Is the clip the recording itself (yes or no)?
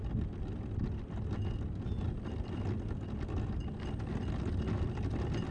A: yes